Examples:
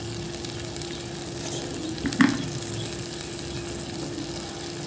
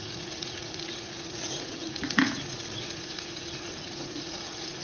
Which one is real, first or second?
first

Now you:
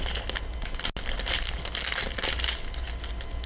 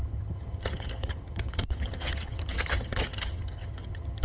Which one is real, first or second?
first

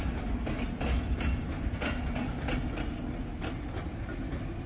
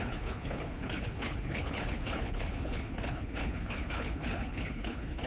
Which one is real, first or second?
first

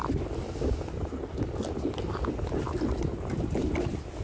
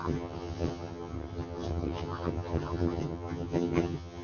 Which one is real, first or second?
first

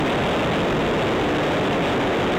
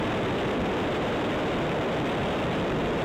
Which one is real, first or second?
first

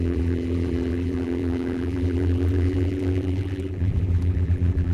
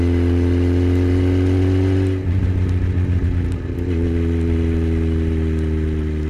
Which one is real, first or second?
second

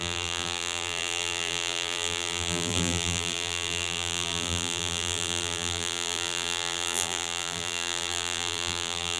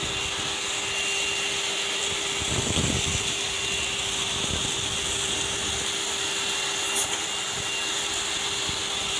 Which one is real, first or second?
second